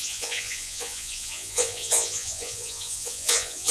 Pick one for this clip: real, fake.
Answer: fake